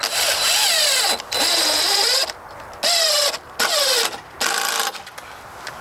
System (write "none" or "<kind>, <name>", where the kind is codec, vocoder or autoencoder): none